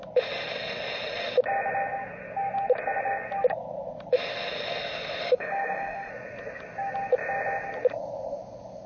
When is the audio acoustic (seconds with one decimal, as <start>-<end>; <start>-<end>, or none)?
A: 0.0-4.8; 6.1-8.9